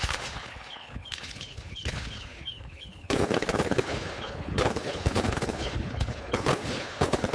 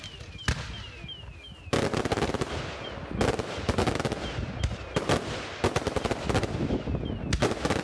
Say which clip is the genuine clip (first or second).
second